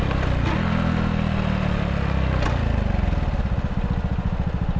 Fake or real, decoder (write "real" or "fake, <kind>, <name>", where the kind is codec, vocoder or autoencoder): real